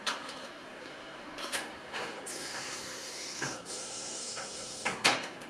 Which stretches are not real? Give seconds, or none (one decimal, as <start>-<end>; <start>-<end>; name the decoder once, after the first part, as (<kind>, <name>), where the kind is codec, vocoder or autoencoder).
0.0-5.5 (codec, SNAC)